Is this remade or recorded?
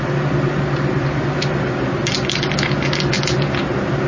recorded